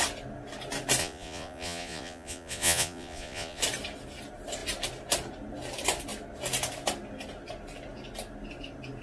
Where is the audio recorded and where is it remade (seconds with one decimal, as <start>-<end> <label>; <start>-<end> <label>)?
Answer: 0.0-1.0 recorded; 1.0-3.6 remade; 3.6-9.0 recorded